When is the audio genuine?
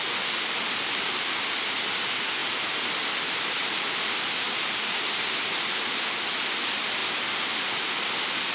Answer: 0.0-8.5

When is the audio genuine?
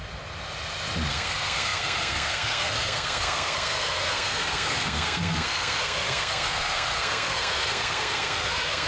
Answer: 0.0-1.1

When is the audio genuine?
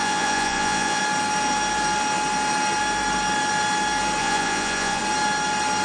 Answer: 1.0-4.2; 5.0-5.8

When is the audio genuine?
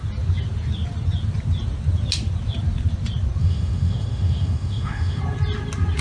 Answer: 0.0-3.4; 5.2-6.0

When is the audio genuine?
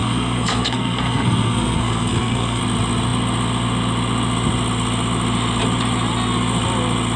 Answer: 2.6-7.2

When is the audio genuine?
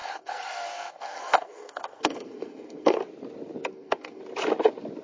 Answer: 3.0-3.7; 4.2-5.0